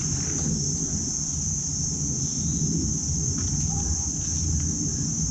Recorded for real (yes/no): yes